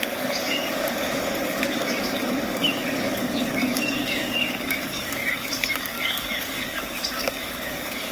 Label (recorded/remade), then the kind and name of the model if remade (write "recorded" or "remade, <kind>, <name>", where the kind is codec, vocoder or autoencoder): remade, codec, DAC